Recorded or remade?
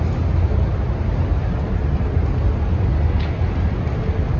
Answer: recorded